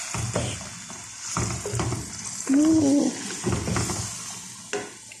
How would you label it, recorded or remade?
recorded